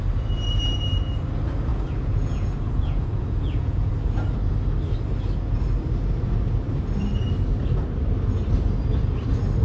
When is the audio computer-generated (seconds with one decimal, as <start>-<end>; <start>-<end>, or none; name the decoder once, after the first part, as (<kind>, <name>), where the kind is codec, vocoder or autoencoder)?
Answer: 1.7-3.9 (vocoder, Vocos)